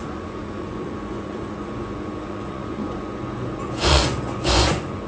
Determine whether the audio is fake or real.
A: fake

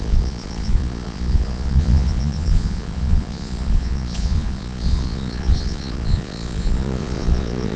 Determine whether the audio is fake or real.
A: fake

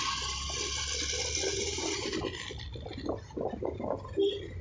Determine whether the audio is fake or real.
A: real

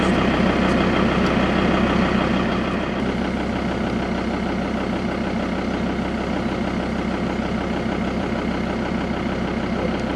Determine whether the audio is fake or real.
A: real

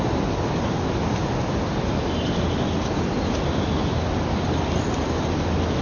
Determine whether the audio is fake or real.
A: real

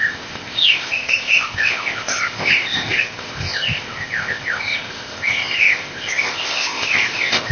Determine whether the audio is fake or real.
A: fake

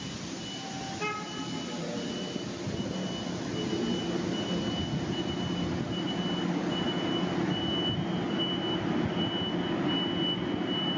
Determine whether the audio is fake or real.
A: real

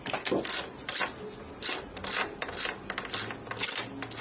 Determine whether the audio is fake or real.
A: real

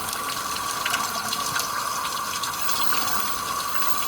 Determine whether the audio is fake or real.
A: real